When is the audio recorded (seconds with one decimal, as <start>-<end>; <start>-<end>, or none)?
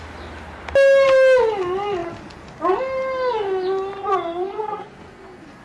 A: 0.0-4.4